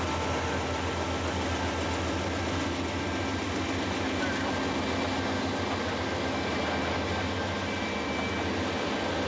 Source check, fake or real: real